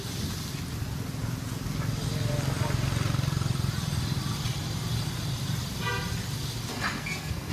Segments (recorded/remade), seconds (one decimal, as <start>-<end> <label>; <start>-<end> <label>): 0.0-6.7 recorded; 6.7-7.5 remade